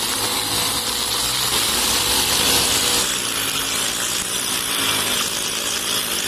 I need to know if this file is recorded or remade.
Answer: recorded